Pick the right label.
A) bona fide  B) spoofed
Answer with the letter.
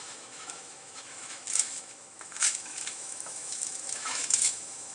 B